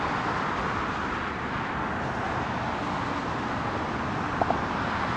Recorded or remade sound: recorded